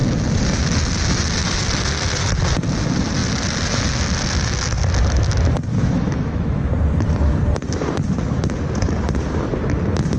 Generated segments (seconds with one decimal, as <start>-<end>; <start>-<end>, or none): 5.7-6.7